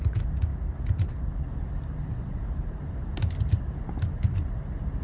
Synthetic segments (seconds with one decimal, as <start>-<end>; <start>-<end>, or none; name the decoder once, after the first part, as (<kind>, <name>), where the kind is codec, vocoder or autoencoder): none